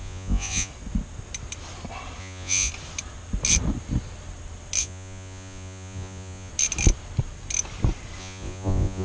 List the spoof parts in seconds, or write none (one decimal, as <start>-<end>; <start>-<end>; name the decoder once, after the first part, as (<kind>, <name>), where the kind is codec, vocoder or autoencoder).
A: 0.0-0.7 (vocoder, Vocos); 2.2-2.7; 4.8-6.5; 8.2-9.0